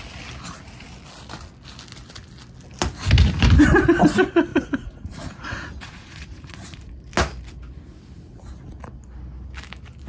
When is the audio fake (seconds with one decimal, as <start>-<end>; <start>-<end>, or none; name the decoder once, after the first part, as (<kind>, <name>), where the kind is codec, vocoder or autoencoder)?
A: 4.5-6.9 (vocoder, Vocos)